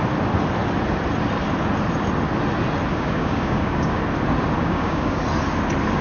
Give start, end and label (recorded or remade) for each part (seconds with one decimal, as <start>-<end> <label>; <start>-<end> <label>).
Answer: 0.0-2.9 recorded; 2.9-4.0 remade; 4.0-4.6 recorded; 4.6-5.2 remade; 5.2-6.0 recorded